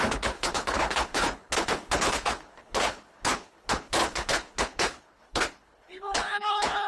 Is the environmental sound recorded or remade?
remade